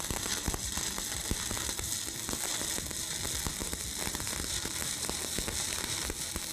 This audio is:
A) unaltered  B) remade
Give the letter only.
A